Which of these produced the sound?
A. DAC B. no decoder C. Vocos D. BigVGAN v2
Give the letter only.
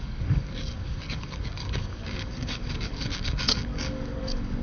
A